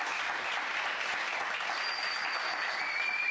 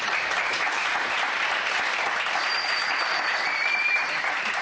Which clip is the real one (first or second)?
first